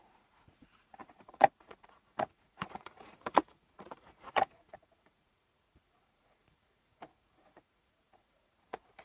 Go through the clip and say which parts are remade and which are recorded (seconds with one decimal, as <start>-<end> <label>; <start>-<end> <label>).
0.0-9.0 remade